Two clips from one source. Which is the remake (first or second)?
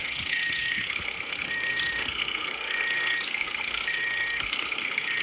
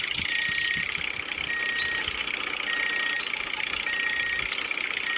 first